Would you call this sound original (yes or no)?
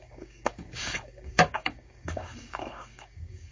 no